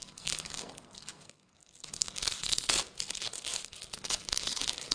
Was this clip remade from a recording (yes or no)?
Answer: yes